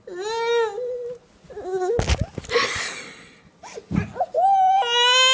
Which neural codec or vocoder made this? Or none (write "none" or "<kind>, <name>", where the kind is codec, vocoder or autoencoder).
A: none